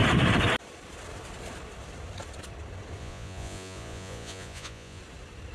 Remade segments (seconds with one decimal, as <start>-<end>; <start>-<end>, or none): 3.0-5.0